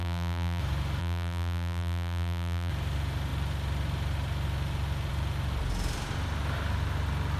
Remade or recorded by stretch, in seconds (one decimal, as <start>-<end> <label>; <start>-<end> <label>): 0.0-0.6 remade; 0.6-1.0 recorded; 1.0-2.7 remade; 2.7-7.4 recorded